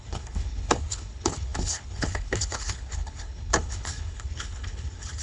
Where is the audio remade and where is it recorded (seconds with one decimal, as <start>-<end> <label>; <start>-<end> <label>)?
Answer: 0.0-5.2 remade